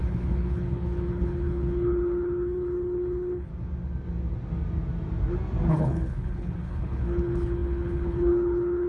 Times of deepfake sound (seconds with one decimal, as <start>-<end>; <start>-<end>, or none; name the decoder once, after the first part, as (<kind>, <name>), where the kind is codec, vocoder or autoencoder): 0.0-3.5 (codec, HILCodec); 5.7-8.9